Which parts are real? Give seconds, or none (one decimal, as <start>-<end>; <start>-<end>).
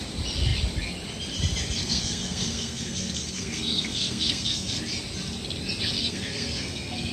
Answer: 0.0-1.8; 4.8-6.0